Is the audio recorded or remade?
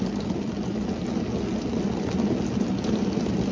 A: recorded